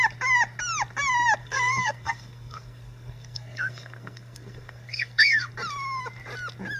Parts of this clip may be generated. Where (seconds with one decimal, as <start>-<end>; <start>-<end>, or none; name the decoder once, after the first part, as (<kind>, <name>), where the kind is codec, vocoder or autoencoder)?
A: 1.4-5.5 (codec, SNAC)